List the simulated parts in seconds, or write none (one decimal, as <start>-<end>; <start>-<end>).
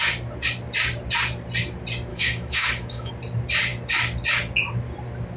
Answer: 2.1-3.1